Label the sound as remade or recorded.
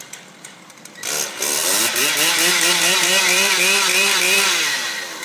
remade